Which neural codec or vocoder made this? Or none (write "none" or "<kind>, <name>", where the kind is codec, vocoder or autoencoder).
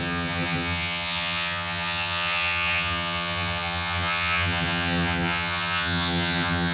vocoder, HiFi-GAN